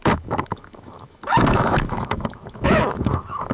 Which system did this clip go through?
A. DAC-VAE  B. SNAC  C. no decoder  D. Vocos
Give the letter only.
A